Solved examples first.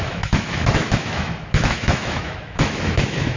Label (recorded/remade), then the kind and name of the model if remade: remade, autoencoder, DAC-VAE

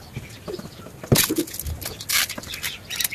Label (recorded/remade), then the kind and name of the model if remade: recorded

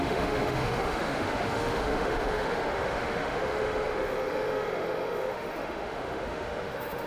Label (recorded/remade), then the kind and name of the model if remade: remade, autoencoder, DAC-VAE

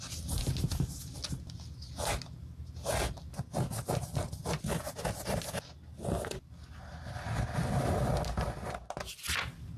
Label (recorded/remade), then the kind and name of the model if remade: recorded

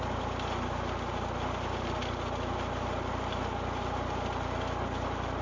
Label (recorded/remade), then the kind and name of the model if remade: recorded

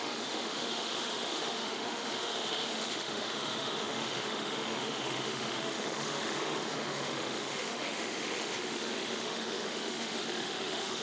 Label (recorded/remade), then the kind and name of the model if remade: remade, autoencoder, DAC-VAE